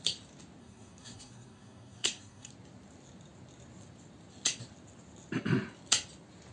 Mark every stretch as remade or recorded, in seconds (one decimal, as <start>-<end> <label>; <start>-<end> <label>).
0.0-0.6 recorded; 0.6-2.5 remade; 2.5-6.5 recorded